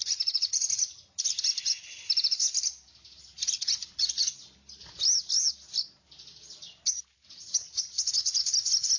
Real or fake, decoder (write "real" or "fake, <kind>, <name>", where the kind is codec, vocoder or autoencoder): real